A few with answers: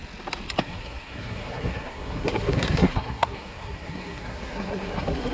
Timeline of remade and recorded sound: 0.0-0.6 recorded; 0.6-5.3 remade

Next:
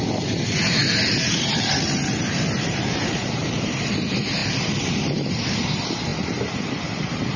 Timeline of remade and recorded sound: 0.0-4.4 remade; 4.4-5.3 recorded; 5.3-7.4 remade

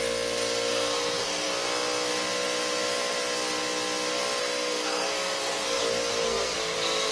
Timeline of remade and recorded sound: 0.0-0.7 recorded; 0.7-1.5 remade; 1.5-4.4 recorded; 4.4-5.8 remade; 5.8-6.2 recorded; 6.2-7.1 remade

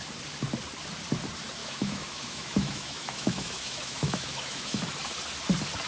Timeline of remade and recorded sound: 0.0-1.6 recorded; 1.6-4.8 remade; 4.8-5.9 recorded

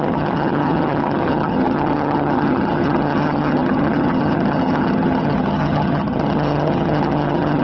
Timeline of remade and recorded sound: 0.0-7.6 remade